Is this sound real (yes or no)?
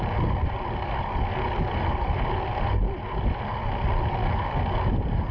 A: yes